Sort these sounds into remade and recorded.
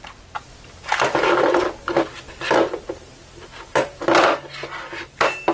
recorded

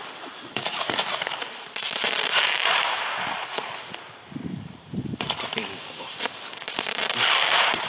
remade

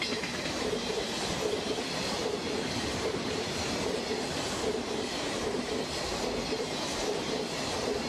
remade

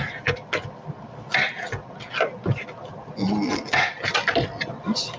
recorded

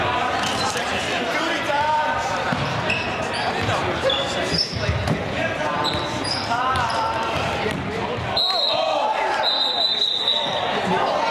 remade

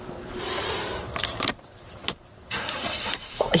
remade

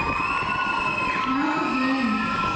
recorded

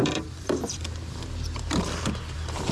remade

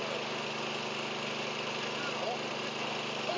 recorded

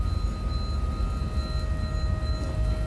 recorded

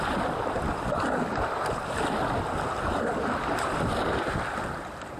recorded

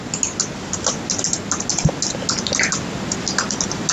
recorded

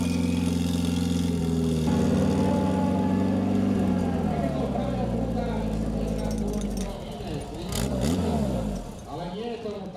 recorded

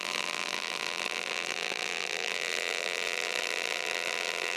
remade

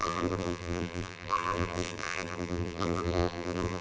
remade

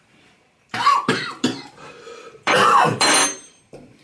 remade